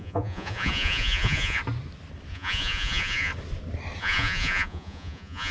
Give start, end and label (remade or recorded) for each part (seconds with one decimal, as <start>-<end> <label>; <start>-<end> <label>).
0.0-1.6 remade; 1.6-2.3 recorded; 2.3-3.3 remade; 3.3-4.0 recorded; 4.0-5.5 remade